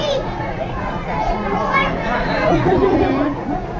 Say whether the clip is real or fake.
fake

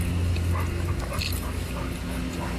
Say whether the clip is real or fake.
real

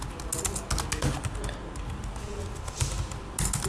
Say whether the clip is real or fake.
real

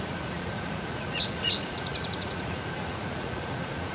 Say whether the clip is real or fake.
fake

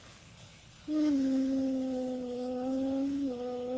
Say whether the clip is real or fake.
fake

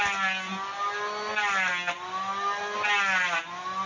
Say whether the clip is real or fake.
real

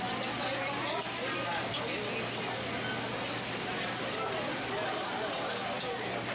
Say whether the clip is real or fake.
real